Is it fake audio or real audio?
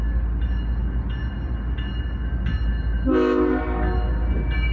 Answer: real